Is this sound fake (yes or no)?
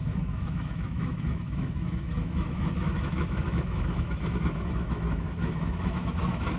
yes